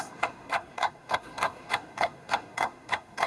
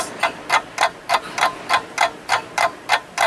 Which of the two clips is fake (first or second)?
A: first